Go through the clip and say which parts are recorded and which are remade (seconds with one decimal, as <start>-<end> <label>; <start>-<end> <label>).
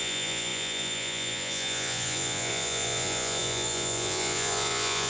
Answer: 0.0-5.1 remade